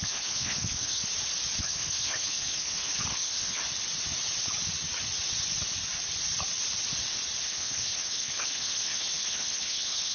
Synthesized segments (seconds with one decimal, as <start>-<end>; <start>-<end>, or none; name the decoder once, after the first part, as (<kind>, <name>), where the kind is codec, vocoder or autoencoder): 0.0-1.0 (codec, HILCodec); 1.6-3.6; 7.4-10.1